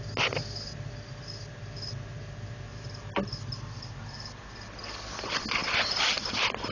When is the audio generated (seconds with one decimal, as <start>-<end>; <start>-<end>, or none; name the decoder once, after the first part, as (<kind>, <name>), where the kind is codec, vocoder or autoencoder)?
0.4-4.4 (vocoder, BigVGAN v2); 5.6-6.7